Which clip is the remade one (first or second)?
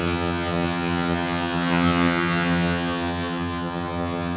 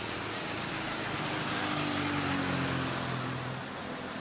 first